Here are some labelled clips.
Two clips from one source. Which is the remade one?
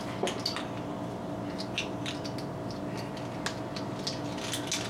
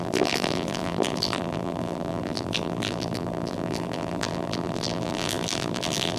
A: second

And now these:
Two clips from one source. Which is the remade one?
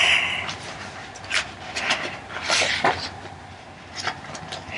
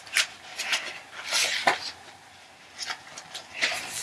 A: second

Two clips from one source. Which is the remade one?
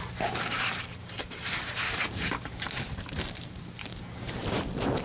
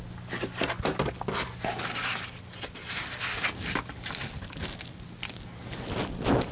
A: first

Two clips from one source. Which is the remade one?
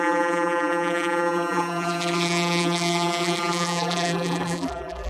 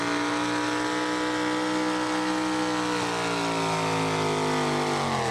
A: first